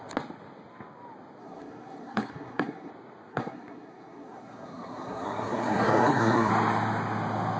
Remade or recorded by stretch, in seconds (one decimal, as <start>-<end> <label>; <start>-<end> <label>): 0.0-1.4 recorded; 1.4-2.9 remade; 2.9-3.3 recorded; 3.3-6.5 remade; 6.5-7.6 recorded